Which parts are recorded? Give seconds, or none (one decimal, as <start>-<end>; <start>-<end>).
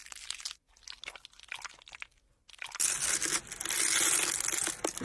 0.0-5.0